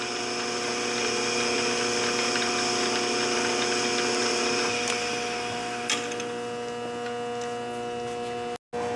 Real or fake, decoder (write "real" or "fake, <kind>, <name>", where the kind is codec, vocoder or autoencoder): real